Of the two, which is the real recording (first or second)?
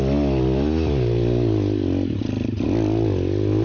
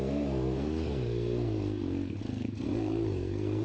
first